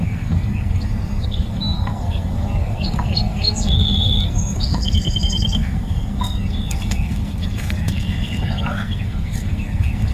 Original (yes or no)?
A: no